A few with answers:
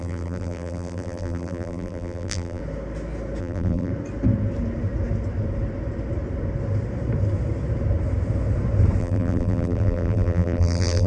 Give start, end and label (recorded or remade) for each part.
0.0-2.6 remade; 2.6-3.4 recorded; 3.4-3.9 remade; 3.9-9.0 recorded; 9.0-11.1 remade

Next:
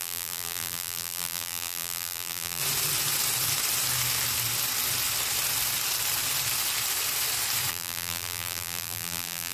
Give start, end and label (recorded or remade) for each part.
0.0-2.6 remade; 2.6-7.7 recorded; 7.7-9.5 remade